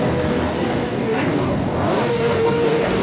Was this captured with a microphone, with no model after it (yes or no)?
no